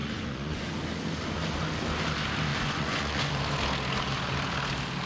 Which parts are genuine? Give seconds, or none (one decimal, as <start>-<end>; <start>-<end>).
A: 0.7-2.5; 3.3-5.1